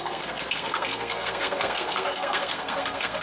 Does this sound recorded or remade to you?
remade